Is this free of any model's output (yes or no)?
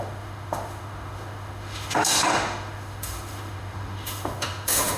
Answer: no